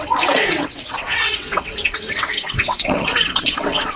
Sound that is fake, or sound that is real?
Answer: fake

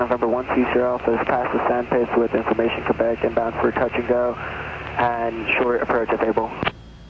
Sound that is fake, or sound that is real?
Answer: real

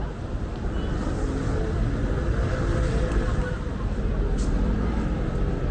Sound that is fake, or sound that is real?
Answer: real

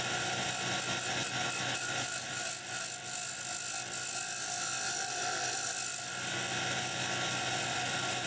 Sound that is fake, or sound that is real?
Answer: real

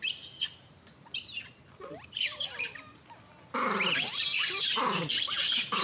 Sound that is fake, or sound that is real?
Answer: real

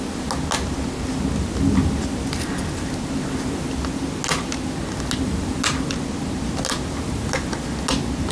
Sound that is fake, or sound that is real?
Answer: real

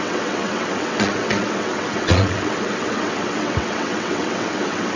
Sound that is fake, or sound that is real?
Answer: fake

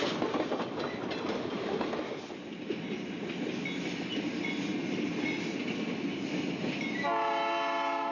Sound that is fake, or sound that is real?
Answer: real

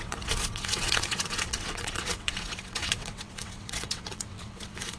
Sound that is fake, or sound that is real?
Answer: fake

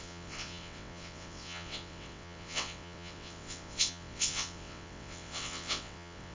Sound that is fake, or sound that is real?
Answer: fake